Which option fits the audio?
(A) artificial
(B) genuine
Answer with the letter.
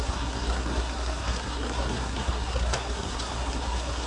A